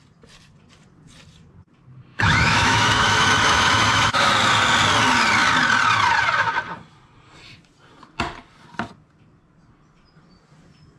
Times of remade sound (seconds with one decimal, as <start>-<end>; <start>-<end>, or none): 2.1-4.3